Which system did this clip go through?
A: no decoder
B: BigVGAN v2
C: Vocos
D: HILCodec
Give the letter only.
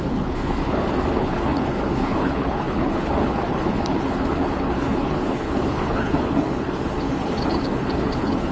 D